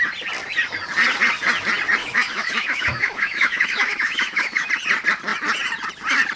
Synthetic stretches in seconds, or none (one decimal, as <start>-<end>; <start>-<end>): 2.0-4.7